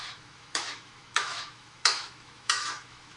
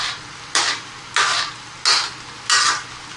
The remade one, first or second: first